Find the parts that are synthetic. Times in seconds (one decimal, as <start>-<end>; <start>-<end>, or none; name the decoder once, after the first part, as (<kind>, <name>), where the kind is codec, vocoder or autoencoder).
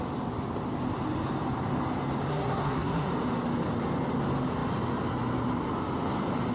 2.3-3.1 (codec, SNAC)